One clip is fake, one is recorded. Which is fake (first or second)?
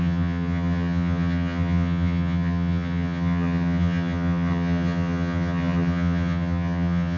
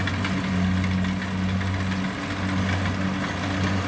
first